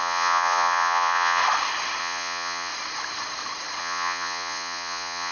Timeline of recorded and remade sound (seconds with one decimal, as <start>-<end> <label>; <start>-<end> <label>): 0.0-1.4 remade; 1.4-2.0 recorded; 2.0-2.7 remade; 2.7-3.8 recorded; 3.8-5.3 remade